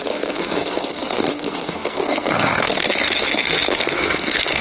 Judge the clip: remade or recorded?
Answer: remade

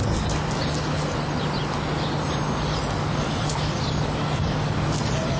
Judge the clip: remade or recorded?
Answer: recorded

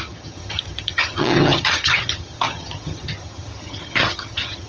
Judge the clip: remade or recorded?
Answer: remade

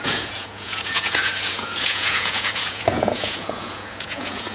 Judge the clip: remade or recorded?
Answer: remade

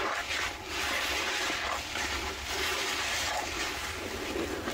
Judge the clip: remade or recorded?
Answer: remade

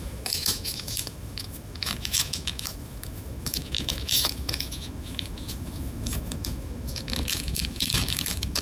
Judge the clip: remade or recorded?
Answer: remade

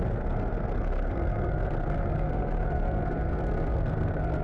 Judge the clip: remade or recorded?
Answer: remade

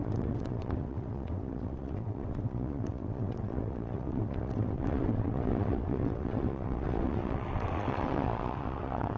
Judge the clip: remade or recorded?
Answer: remade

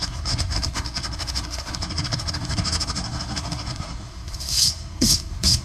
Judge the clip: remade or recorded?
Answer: remade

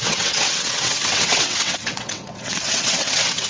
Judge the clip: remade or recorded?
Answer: remade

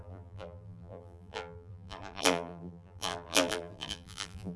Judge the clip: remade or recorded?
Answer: remade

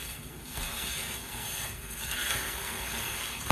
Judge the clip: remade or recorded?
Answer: remade